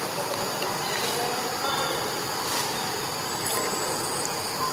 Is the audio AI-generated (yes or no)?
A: yes